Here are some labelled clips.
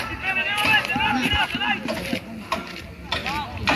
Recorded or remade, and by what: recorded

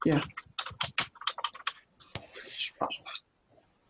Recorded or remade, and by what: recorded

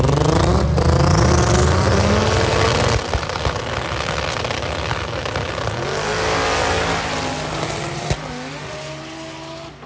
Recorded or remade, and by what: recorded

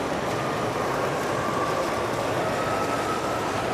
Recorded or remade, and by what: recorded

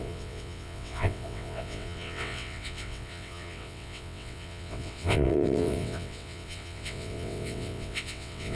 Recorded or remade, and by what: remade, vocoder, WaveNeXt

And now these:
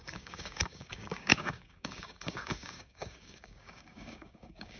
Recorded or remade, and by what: remade, codec, DAC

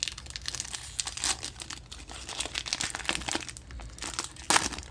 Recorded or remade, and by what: recorded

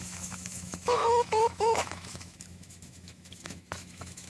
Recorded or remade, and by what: remade, autoencoder, DAC-VAE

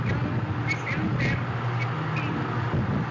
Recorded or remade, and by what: recorded